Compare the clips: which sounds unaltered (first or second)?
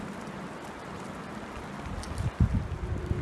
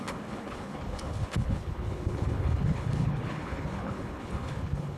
first